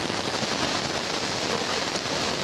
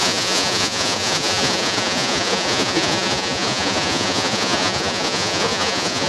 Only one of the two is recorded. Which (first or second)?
first